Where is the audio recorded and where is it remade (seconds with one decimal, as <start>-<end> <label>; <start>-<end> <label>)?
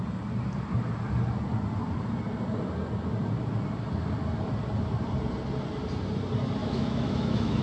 0.0-6.6 recorded; 6.6-7.6 remade